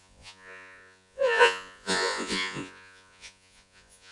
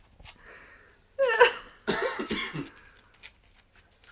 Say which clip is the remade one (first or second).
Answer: first